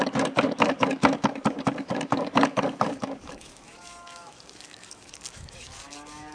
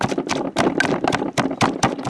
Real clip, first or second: second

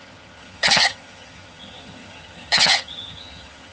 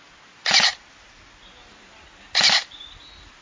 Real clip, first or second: second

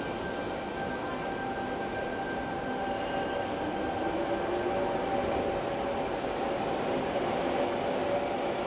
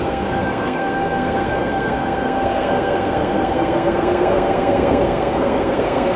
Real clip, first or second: first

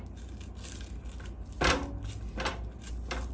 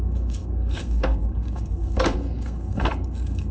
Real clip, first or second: first